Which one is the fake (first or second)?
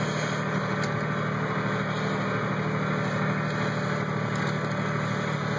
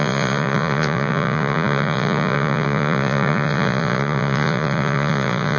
second